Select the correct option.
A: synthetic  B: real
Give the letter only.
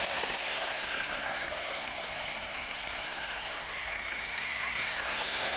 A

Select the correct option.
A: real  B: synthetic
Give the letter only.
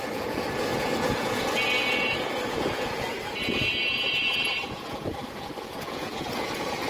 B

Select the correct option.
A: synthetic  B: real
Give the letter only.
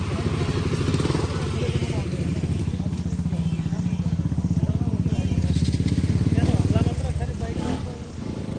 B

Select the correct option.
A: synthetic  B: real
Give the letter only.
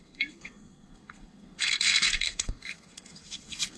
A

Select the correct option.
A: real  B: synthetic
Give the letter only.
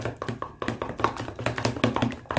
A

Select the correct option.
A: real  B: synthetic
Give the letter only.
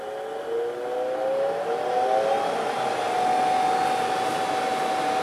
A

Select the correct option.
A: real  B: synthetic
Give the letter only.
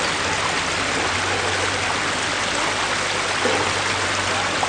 A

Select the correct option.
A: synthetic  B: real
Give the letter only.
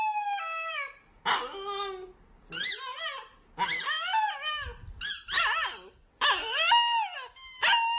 B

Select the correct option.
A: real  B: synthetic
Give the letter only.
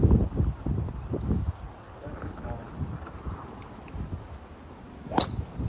A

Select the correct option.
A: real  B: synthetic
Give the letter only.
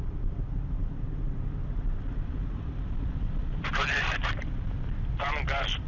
B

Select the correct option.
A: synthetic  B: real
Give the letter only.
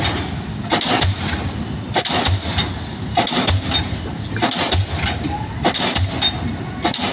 B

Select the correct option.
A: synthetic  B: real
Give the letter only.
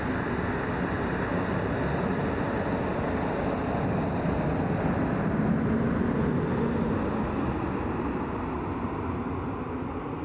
B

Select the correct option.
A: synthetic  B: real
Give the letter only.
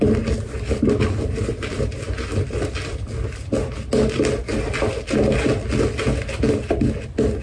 B